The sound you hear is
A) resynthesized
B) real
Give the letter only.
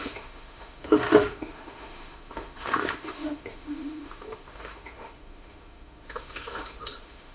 A